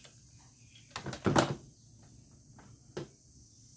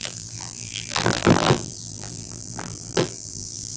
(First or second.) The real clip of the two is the first